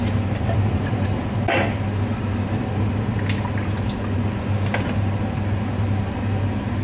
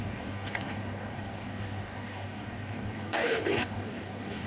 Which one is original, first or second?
first